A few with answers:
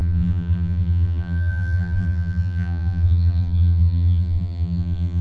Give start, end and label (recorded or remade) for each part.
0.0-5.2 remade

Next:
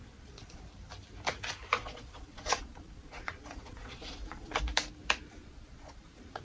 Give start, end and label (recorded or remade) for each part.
0.0-0.6 remade; 0.6-1.8 recorded; 1.8-4.6 remade; 4.6-5.4 recorded; 5.4-6.4 remade

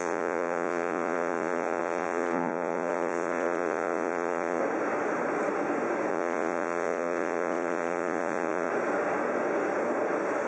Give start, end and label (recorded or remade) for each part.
0.0-4.6 remade; 4.6-6.1 recorded; 6.1-8.7 remade; 8.7-10.5 recorded